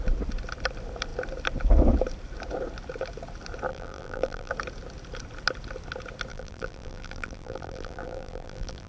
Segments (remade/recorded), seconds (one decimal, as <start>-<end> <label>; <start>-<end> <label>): 0.0-3.7 recorded; 3.7-4.5 remade; 4.5-6.3 recorded; 6.3-8.9 remade